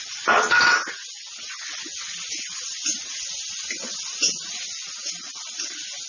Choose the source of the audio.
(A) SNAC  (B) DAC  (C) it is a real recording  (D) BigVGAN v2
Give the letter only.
C